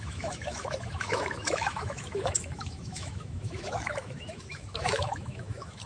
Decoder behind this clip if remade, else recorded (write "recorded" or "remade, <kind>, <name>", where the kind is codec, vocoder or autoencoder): remade, autoencoder, DAC-VAE